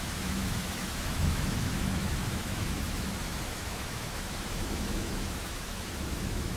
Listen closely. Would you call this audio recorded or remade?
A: remade